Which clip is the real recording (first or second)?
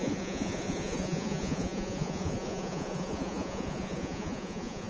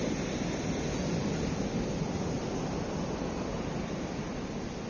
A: second